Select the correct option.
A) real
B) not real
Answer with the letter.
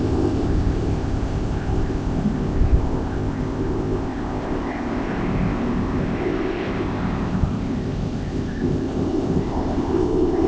B